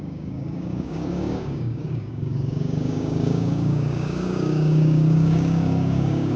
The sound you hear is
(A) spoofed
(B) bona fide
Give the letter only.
A